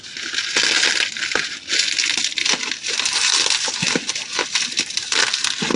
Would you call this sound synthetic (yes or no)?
no